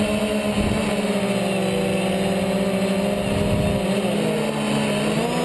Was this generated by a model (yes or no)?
no